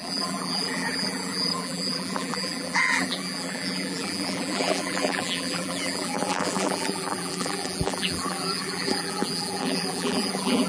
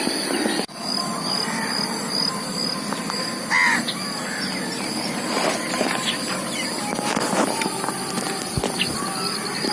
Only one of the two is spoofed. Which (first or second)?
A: first